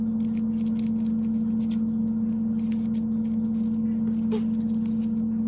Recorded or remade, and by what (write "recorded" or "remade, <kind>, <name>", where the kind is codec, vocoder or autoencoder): recorded